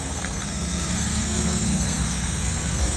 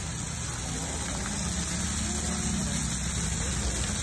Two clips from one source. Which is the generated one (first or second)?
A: first